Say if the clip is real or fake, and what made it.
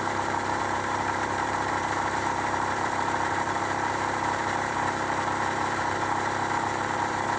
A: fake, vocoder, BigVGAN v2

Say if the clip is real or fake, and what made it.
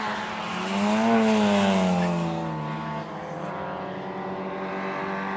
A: real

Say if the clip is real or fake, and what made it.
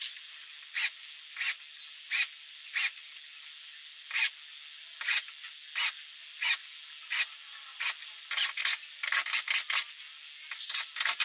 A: real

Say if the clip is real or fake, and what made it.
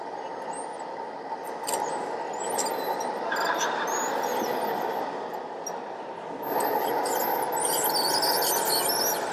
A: real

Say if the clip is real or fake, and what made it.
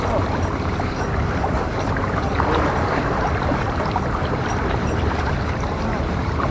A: fake, vocoder, BigVGAN v2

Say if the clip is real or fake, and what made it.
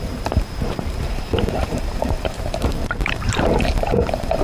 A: fake, vocoder, BigVGAN v2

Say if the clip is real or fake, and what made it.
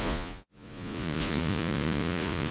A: fake, vocoder, Vocos